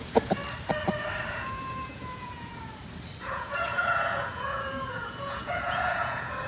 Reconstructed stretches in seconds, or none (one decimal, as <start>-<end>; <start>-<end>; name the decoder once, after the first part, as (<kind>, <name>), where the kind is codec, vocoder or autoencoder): 0.0-0.4 (vocoder, Vocos); 1.3-2.5; 3.3-6.5